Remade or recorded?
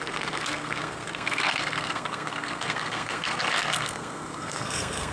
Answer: remade